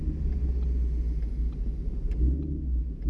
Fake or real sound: real